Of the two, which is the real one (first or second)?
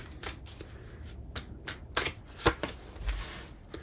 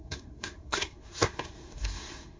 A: first